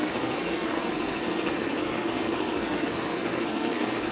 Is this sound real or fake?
fake